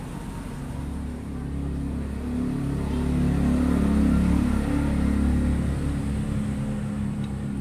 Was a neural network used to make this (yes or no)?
no